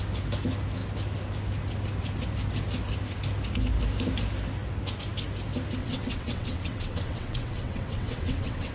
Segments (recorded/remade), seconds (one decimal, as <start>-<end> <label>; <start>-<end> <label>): 0.0-5.8 recorded; 5.8-8.7 remade